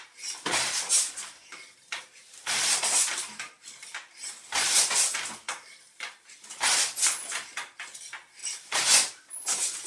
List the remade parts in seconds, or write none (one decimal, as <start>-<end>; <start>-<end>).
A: none